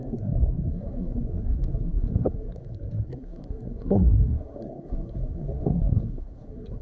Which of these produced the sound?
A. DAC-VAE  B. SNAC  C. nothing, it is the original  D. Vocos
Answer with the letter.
B